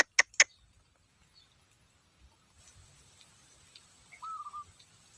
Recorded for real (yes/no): yes